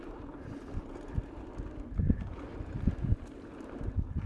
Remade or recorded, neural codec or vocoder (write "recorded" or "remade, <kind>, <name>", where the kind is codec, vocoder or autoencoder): recorded